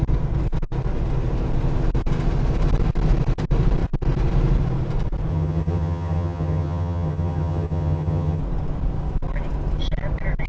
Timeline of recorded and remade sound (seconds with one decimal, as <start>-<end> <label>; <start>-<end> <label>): 0.0-5.3 recorded; 5.3-8.4 remade; 8.4-10.5 recorded